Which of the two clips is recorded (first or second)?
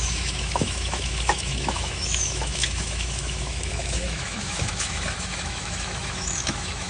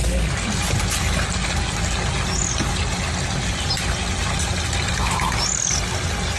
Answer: second